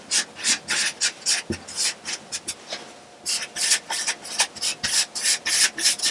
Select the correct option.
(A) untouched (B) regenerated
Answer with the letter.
A